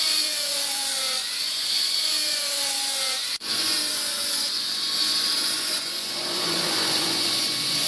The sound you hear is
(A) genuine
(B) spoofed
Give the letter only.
B